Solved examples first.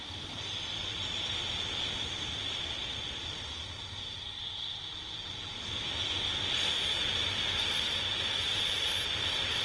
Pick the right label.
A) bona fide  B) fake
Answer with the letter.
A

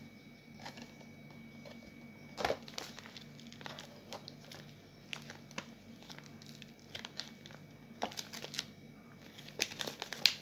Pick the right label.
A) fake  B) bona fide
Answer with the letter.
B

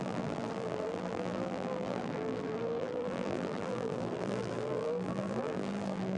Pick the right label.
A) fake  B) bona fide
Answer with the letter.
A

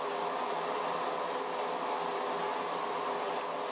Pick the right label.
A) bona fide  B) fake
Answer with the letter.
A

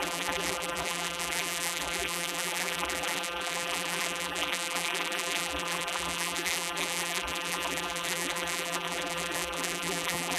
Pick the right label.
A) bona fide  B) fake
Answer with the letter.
B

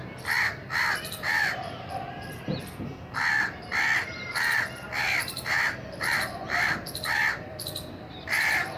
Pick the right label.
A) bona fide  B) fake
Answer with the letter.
B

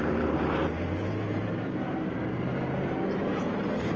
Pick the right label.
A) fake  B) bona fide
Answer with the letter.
A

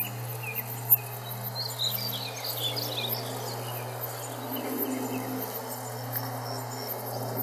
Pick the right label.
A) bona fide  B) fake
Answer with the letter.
A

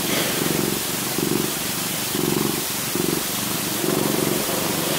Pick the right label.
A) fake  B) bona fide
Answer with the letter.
A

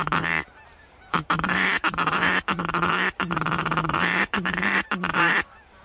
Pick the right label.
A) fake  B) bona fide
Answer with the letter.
A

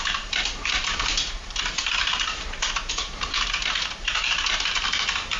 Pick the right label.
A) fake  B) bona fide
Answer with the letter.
A